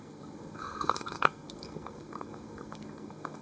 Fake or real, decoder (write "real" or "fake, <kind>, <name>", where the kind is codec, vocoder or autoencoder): fake, codec, SNAC